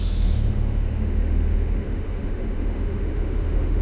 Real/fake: fake